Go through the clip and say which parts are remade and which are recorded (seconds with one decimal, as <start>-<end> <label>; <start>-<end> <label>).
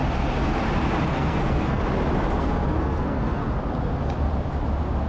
0.0-1.1 recorded; 1.1-1.8 remade; 1.8-2.4 recorded; 2.4-3.4 remade; 3.4-5.1 recorded